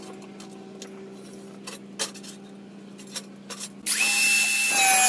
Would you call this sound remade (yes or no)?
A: no